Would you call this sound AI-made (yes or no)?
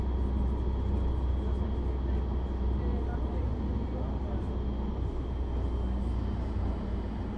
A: no